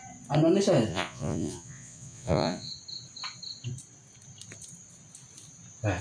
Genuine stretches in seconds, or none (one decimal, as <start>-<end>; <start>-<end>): 0.0-0.9; 2.7-6.0